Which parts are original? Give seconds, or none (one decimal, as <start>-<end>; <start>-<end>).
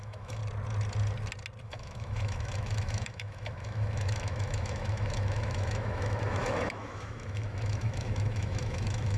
0.4-1.6